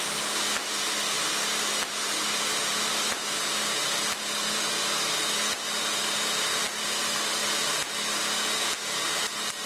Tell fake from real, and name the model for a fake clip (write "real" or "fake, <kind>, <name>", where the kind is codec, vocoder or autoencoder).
real